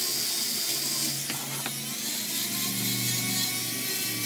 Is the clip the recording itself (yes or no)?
yes